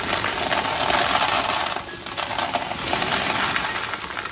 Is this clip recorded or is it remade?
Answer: recorded